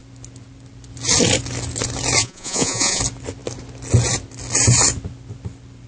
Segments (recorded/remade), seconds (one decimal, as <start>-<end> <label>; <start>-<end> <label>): 0.0-2.2 recorded; 2.2-3.0 remade; 3.0-5.9 recorded